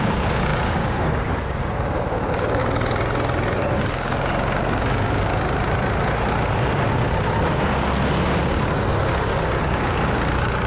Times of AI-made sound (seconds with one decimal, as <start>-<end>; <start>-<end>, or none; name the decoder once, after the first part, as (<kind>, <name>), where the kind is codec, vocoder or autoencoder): 0.0-2.6 (codec, DAC); 3.9-5.3; 9.6-10.7